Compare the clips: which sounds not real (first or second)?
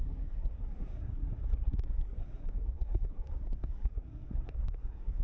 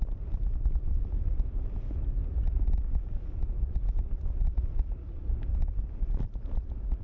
first